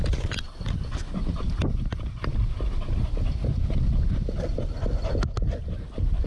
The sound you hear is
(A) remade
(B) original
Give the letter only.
B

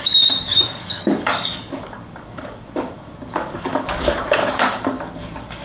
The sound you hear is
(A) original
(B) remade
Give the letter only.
B